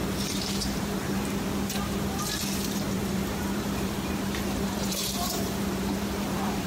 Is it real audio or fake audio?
fake